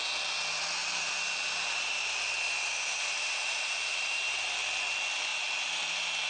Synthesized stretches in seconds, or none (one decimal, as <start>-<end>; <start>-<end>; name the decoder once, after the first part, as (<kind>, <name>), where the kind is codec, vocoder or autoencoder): 0.8-4.5 (vocoder, BigVGAN v2); 5.3-5.8